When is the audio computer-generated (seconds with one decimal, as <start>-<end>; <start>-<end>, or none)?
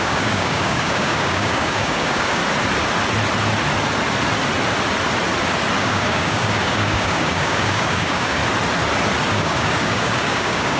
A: 0.0-2.4; 5.8-8.4; 9.3-10.8